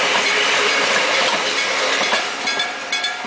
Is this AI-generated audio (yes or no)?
yes